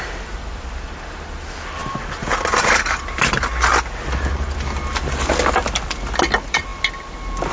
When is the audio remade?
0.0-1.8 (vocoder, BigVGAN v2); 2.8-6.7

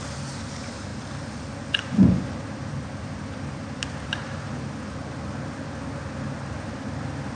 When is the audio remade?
0.9-1.5 (vocoder, BigVGAN v2); 2.0-5.1

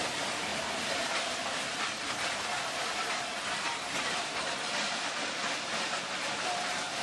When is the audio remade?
0.0-0.5 (vocoder, BigVGAN v2); 2.0-7.0

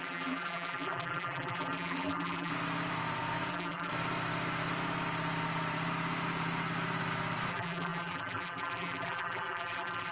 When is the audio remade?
0.0-2.5 (vocoder, BigVGAN v2); 3.5-3.9; 7.5-10.1